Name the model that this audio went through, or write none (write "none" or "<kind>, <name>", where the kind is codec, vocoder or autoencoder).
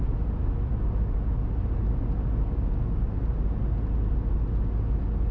none